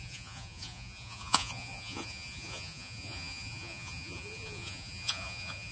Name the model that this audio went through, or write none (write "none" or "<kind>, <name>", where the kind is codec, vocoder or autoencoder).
vocoder, Vocos